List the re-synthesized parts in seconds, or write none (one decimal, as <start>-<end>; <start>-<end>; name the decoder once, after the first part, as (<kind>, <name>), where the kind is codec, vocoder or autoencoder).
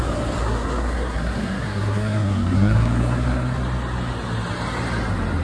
0.4-3.6 (codec, SNAC)